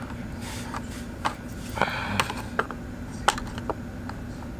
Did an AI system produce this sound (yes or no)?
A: no